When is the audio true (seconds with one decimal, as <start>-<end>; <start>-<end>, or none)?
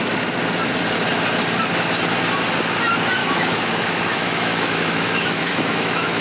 0.0-3.2